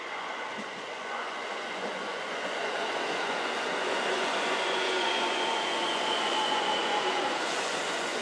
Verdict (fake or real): fake